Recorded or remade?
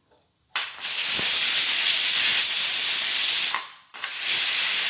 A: recorded